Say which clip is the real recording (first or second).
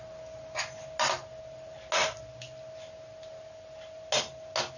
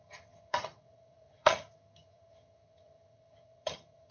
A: first